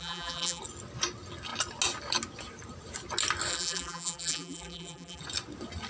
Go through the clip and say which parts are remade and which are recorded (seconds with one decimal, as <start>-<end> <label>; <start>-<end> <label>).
0.0-0.6 remade; 0.6-3.5 recorded; 3.5-5.2 remade; 5.2-5.9 recorded